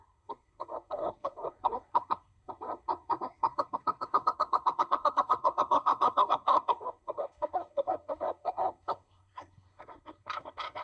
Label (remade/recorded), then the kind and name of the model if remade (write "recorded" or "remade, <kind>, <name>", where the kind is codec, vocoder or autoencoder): remade, codec, SNAC